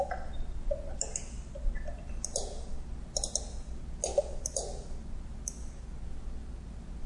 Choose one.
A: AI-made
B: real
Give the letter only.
B